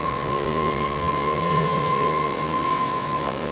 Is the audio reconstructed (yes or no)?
yes